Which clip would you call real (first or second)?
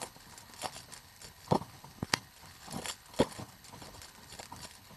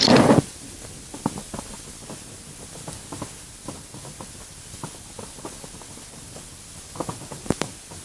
second